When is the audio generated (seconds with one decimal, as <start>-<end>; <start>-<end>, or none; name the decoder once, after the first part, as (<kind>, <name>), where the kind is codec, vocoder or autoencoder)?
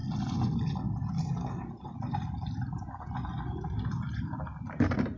2.1-2.9 (vocoder, BigVGAN v2); 3.5-5.2